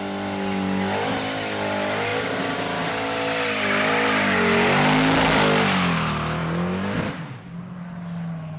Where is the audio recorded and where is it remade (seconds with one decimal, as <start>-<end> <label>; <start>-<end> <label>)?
0.0-8.6 recorded